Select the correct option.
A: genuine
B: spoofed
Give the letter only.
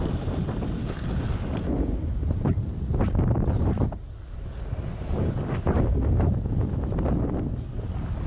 A